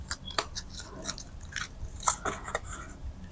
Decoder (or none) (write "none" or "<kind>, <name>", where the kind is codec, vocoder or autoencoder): none